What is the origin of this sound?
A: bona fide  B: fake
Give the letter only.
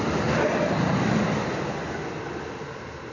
A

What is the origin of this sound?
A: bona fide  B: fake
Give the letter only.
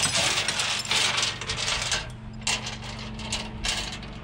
A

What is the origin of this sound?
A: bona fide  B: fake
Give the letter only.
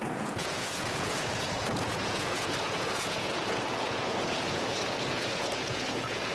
B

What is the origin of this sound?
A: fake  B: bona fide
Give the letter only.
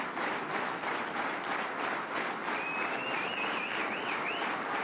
B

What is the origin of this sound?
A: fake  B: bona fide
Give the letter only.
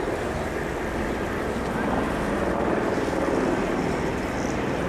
B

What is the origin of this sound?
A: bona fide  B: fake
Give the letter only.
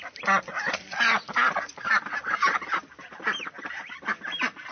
A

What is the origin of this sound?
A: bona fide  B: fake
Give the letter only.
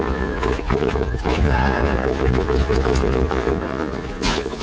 B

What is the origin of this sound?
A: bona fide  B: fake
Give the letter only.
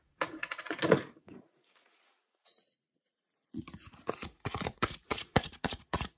B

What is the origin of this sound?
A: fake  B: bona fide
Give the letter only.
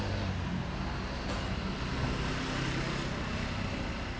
B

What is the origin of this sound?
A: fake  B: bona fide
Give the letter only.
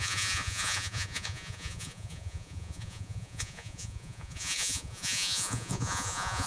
A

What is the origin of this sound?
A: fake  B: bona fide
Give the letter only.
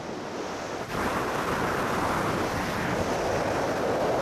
B